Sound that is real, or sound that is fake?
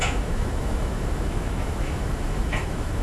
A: fake